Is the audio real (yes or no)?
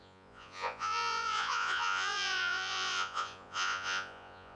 no